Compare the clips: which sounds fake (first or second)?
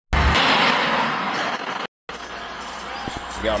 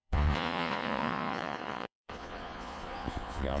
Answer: second